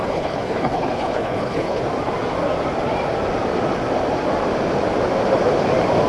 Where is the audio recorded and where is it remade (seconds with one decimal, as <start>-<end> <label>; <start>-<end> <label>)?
0.0-1.8 remade; 1.8-6.1 recorded